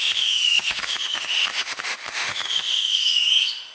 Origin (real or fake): fake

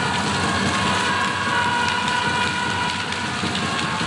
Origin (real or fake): real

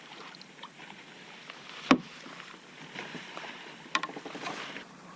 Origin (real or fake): fake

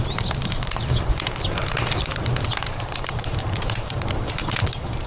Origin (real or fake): fake